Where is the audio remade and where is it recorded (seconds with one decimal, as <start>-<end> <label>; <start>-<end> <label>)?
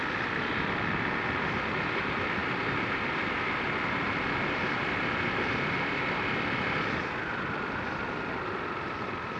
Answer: 0.0-9.4 recorded